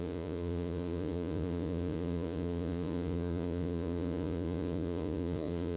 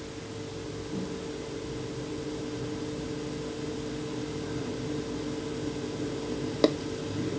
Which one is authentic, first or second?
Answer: second